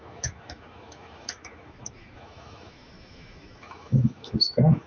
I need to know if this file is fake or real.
fake